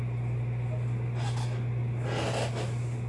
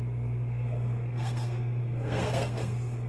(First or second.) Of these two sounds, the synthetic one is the second